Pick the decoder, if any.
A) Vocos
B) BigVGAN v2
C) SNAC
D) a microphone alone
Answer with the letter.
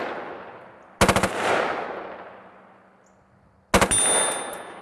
D